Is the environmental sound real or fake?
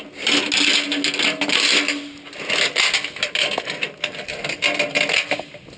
real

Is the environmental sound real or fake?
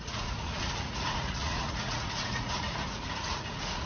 fake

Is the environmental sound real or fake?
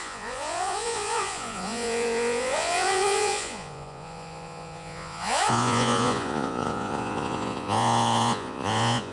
fake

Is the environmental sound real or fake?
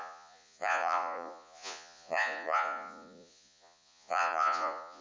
fake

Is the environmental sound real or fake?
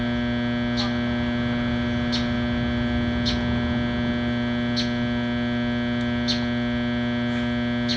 real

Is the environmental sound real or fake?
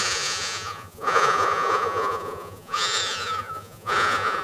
fake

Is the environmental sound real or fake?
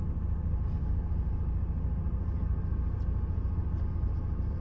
real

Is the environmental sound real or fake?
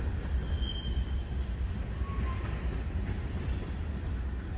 real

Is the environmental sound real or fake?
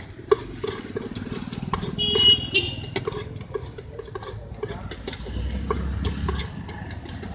real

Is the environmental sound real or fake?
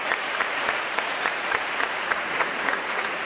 fake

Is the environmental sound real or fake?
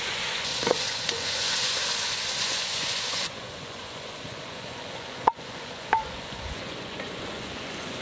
fake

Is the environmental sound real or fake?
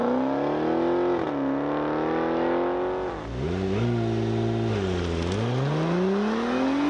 real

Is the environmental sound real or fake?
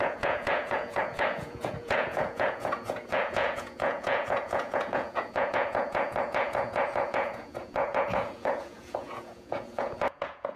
fake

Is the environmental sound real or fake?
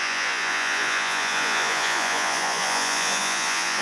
fake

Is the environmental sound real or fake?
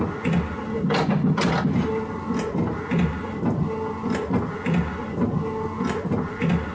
real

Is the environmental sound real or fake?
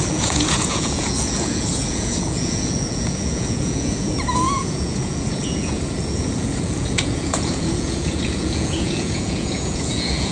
fake